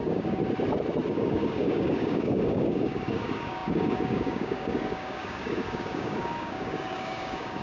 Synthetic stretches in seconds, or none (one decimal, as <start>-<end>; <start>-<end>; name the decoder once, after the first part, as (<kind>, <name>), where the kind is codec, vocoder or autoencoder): 0.0-0.4 (codec, DAC); 1.1-7.6